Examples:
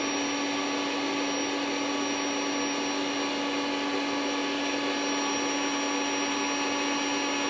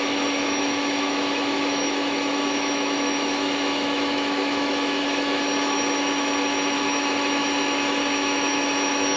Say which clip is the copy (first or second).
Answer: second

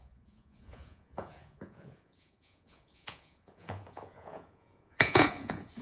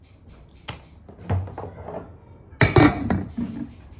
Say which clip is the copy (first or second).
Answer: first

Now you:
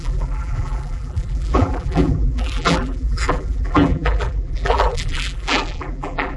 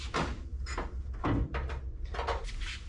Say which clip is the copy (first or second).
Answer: first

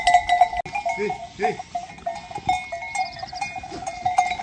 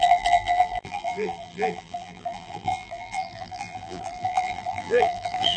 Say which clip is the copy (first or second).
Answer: second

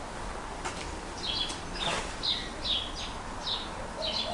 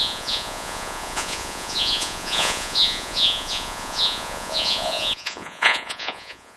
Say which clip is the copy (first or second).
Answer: second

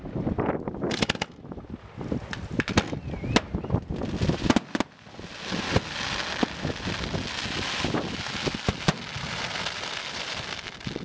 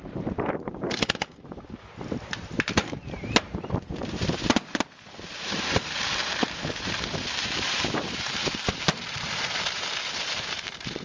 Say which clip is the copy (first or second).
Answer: second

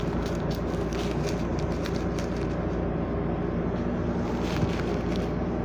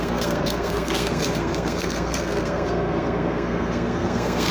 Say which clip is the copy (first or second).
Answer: second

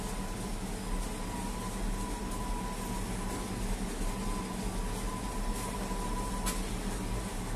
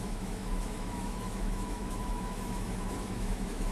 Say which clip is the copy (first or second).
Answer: second